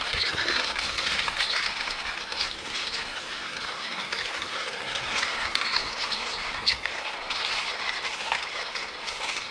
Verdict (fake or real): fake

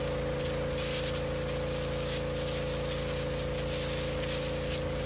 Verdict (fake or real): real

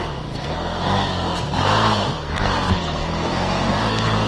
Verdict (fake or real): fake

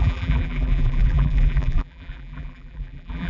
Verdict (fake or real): fake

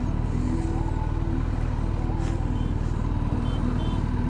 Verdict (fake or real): real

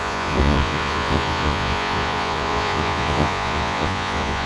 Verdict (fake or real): fake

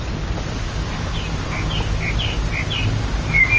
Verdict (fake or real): real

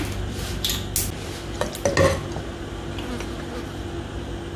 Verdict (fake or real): real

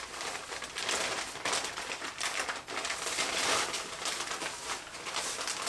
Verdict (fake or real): real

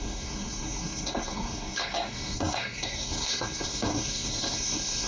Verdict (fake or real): fake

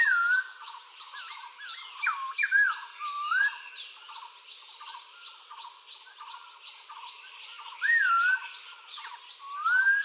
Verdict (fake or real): real